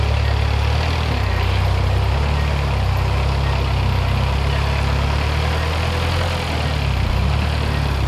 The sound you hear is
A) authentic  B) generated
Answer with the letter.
A